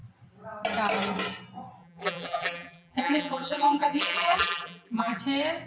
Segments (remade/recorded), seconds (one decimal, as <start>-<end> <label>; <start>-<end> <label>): 0.0-1.8 recorded; 1.8-5.2 remade; 5.2-5.7 recorded